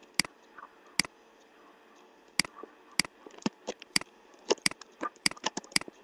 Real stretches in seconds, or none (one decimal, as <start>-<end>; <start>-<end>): 0.0-3.2